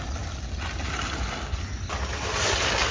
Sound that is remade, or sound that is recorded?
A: recorded